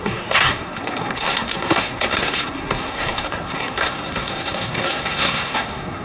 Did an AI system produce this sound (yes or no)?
yes